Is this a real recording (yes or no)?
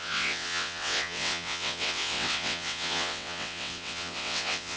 no